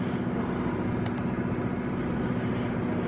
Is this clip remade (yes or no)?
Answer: no